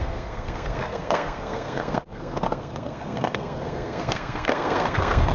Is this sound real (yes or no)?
no